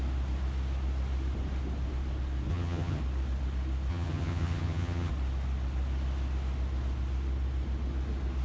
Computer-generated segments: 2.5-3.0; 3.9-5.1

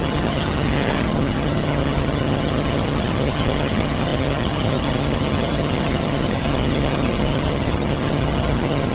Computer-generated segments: 0.0-8.9

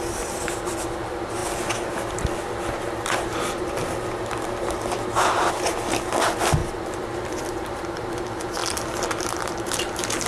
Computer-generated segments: 6.6-8.1

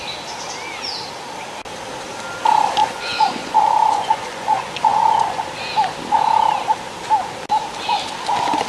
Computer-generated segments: 2.8-5.4

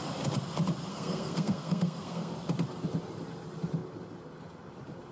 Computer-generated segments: 0.9-2.3